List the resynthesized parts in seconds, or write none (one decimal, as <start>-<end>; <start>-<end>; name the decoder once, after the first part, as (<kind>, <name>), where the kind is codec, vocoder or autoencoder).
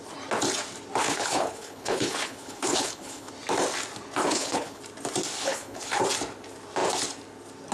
1.0-3.3 (codec, HILCodec); 4.2-4.8; 5.4-6.0